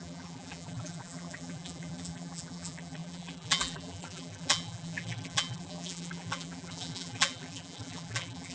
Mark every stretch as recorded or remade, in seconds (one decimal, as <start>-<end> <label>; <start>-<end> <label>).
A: 0.0-8.5 remade